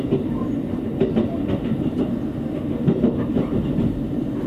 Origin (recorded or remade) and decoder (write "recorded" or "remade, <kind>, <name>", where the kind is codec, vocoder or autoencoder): recorded